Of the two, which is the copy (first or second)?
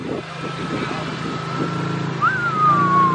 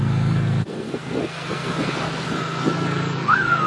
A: second